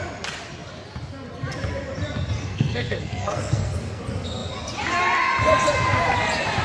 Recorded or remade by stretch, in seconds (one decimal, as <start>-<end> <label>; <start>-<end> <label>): 0.0-2.4 recorded; 2.4-4.0 remade; 4.0-6.6 recorded